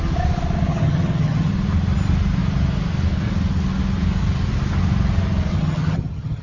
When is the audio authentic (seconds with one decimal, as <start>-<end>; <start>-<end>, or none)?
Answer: 0.0-0.7; 1.5-5.5